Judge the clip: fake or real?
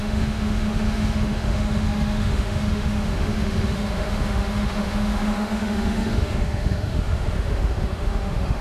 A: fake